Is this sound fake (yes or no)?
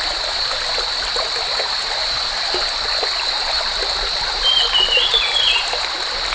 no